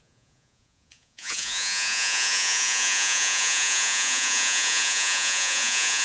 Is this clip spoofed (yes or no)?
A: yes